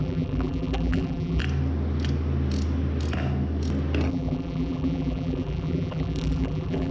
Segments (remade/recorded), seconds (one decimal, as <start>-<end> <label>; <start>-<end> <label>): 0.0-1.4 remade; 1.4-4.1 recorded; 4.1-6.9 remade